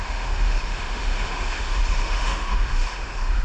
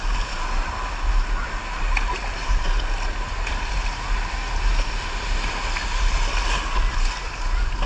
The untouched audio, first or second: second